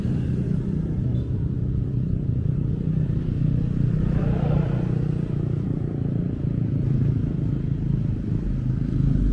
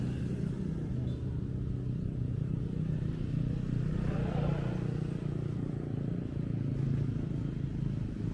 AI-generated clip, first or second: first